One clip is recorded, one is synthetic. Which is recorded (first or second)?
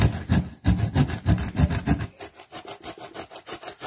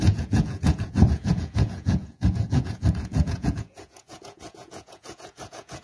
first